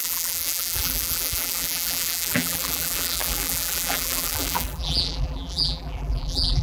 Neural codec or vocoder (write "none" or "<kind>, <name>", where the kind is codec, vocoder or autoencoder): vocoder, BigVGAN v2